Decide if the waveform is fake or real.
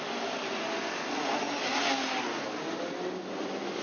real